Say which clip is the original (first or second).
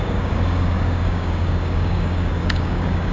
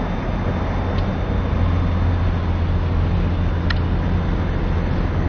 second